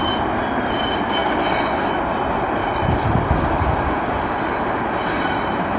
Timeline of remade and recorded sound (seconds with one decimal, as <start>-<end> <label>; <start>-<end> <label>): 0.0-2.6 recorded; 2.6-5.8 remade